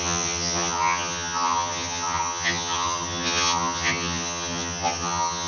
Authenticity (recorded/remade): remade